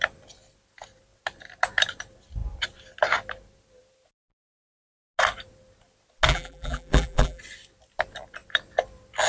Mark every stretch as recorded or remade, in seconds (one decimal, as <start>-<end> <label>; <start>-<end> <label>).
0.0-6.3 recorded; 6.3-7.4 remade; 7.4-9.3 recorded